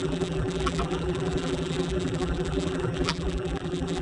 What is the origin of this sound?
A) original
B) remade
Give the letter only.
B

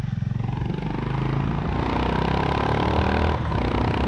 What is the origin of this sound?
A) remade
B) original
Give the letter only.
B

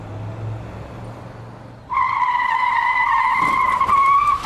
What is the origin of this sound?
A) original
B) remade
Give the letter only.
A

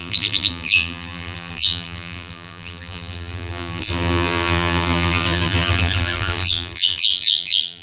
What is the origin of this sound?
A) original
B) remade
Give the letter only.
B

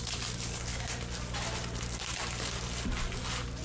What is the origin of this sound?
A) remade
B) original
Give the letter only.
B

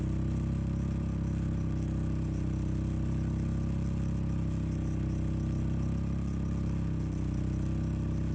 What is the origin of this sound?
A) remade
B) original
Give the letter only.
B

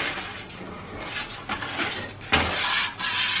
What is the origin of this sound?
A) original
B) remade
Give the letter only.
A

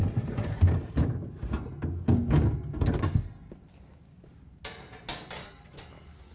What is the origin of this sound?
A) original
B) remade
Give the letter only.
A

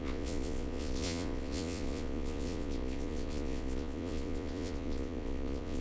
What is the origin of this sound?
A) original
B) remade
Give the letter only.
B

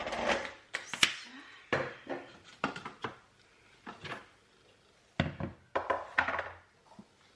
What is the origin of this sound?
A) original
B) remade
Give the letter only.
A